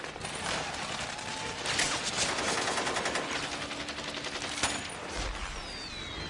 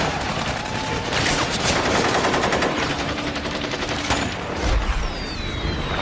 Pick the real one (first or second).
first